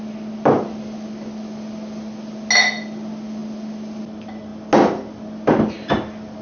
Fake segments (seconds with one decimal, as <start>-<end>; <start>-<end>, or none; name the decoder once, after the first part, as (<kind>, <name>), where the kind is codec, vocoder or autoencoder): none